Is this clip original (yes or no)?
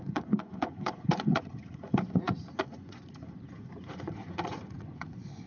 no